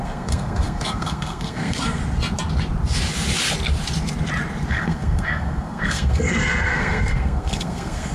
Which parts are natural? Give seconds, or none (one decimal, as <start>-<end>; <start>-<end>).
2.0-4.7